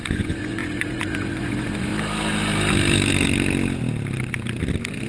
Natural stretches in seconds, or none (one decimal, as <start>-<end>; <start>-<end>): 1.9-5.1